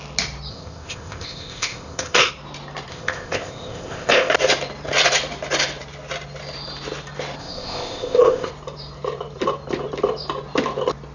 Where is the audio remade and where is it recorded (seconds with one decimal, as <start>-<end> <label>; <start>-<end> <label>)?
0.0-0.5 recorded; 0.5-2.3 remade; 2.3-2.9 recorded; 2.9-4.3 remade; 4.3-7.4 recorded; 7.4-8.5 remade; 8.5-11.1 recorded